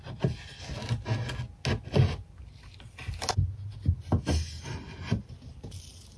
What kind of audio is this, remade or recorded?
recorded